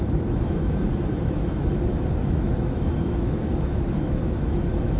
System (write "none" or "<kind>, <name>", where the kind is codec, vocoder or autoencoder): autoencoder, DAC-VAE